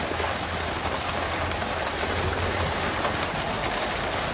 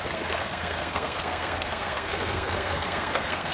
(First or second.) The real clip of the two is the first